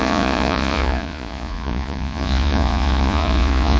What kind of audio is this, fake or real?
fake